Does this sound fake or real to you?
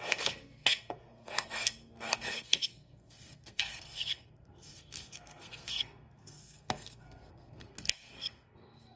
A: fake